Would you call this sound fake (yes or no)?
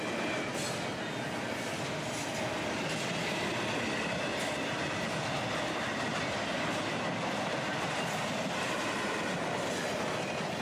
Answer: no